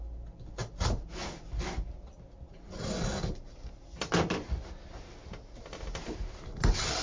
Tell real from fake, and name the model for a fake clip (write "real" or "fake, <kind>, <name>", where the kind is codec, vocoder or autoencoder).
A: real